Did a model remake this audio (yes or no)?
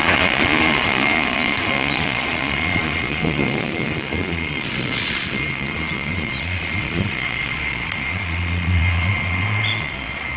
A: yes